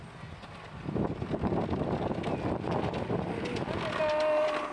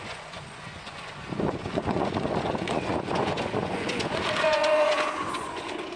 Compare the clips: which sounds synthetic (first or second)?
second